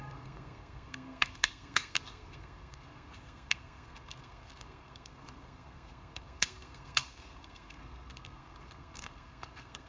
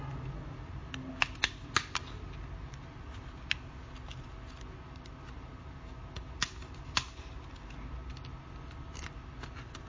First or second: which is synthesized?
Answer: first